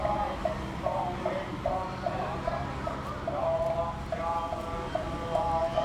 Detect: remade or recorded recorded